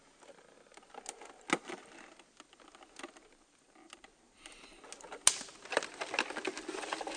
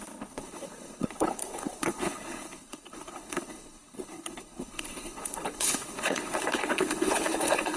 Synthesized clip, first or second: second